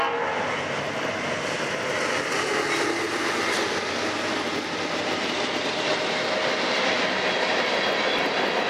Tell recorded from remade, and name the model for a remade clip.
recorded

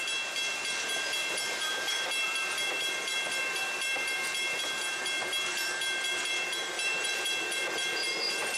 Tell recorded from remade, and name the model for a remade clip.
remade, vocoder, BigVGAN v2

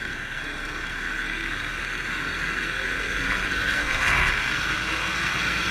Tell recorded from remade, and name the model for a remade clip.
remade, codec, SNAC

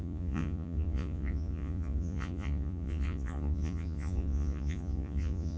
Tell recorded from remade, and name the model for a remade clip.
remade, vocoder, Vocos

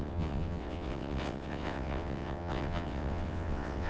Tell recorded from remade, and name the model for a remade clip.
remade, vocoder, WaveNeXt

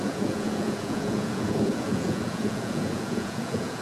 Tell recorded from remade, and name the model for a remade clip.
remade, vocoder, Vocos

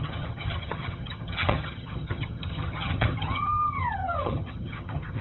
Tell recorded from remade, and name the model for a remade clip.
remade, vocoder, HiFi-GAN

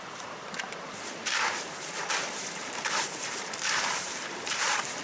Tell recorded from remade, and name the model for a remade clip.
remade, vocoder, BigVGAN v2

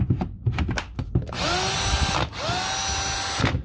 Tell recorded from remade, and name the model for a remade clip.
recorded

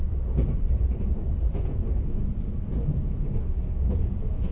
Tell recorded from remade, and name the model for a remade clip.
remade, vocoder, Vocos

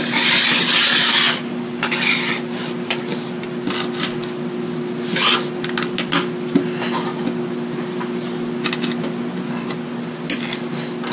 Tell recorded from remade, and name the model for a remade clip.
recorded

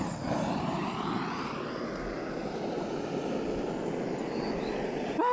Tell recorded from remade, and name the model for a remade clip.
recorded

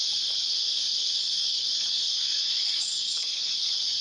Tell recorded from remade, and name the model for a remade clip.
remade, codec, DAC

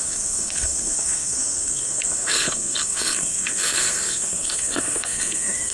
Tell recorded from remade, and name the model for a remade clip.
remade, codec, SNAC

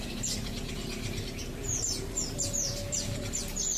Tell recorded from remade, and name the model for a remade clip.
recorded